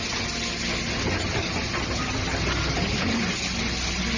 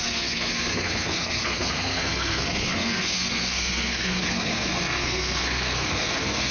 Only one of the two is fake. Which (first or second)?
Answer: second